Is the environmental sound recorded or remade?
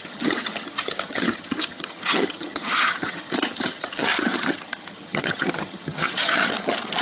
remade